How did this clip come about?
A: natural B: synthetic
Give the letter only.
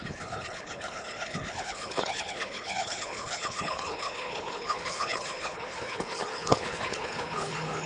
B